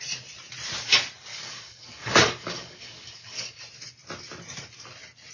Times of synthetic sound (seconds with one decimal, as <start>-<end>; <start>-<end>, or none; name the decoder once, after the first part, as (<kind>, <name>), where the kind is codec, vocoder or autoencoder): 1.3-3.6 (codec, DAC)